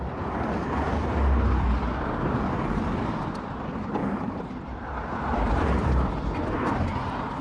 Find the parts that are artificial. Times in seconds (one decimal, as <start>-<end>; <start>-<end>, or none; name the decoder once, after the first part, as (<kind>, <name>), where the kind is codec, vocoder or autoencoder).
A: 4.0-5.9 (vocoder, BigVGAN v2)